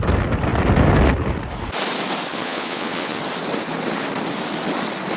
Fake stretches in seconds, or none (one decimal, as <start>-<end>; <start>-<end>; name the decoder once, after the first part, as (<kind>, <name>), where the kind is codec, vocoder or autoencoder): 2.3-3.2 (vocoder, Vocos)